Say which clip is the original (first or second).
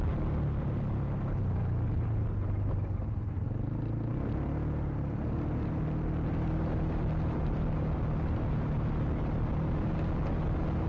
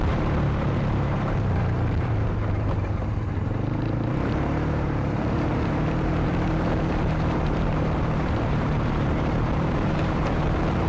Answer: first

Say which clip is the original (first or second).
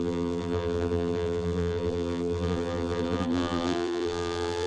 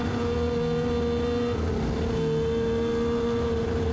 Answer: second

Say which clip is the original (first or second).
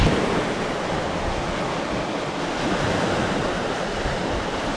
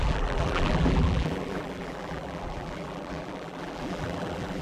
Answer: first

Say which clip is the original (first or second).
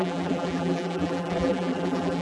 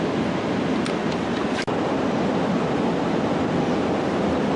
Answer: second